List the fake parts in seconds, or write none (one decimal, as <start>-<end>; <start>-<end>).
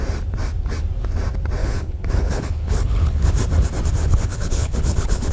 1.6-3.3; 4.0-5.3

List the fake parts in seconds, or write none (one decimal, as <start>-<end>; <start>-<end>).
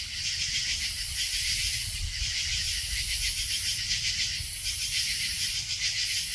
0.6-2.6; 3.7-5.7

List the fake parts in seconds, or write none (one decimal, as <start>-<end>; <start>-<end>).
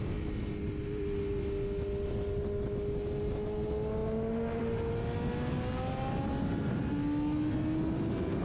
none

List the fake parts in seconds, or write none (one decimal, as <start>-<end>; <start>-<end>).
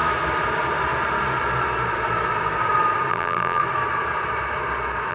3.1-3.6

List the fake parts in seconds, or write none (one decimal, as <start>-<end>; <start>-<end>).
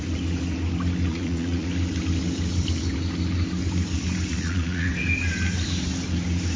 1.1-1.7; 4.3-4.9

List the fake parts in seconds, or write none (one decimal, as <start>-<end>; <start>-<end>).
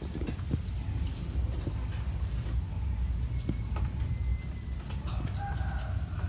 none